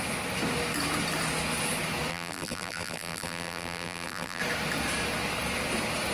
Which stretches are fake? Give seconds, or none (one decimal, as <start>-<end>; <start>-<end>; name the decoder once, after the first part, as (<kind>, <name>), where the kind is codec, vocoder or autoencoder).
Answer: 2.1-4.4 (vocoder, BigVGAN v2)